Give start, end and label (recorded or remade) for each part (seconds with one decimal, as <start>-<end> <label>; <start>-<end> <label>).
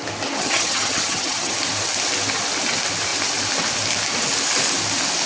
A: 0.0-0.4 recorded; 0.4-1.5 remade; 1.5-5.3 recorded